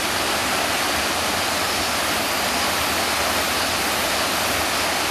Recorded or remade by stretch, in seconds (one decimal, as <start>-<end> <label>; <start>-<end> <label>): 0.0-5.1 recorded